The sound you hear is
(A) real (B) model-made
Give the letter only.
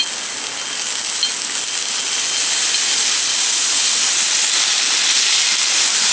A